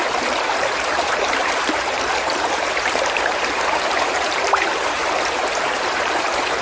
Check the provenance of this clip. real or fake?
fake